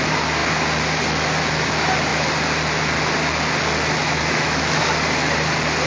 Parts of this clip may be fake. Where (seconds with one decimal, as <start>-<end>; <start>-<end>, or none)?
4.0-4.8